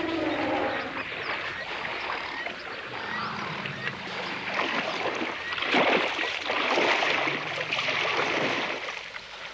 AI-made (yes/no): no